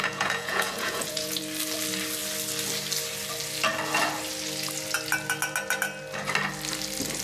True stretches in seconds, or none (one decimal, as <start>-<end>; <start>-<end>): 1.4-7.2